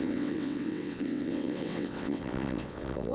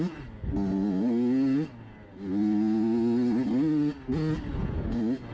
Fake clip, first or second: first